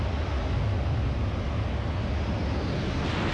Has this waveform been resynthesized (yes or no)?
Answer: no